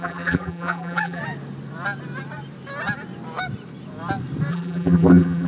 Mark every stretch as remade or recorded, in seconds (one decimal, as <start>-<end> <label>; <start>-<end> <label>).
0.0-1.2 remade; 1.2-4.5 recorded; 4.5-5.5 remade